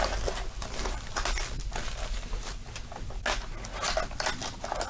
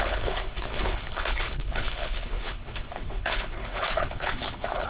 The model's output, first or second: second